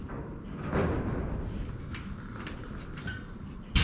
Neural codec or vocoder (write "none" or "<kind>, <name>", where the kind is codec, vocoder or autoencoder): none